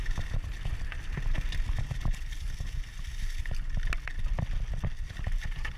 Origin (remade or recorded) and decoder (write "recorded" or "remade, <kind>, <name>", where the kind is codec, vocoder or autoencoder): recorded